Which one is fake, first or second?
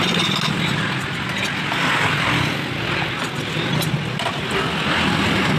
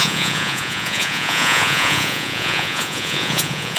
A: second